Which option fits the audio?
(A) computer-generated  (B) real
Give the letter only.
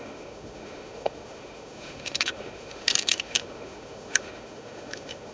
A